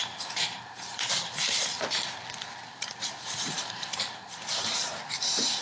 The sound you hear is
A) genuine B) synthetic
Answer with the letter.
B